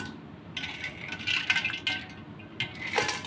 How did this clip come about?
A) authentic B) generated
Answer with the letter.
A